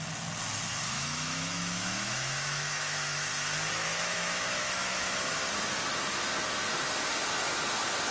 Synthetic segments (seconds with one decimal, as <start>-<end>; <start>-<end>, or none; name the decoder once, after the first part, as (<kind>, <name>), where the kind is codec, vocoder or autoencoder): 0.7-3.3 (autoencoder, DAC-VAE); 3.7-5.5